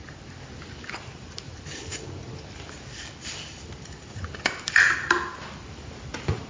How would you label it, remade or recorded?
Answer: recorded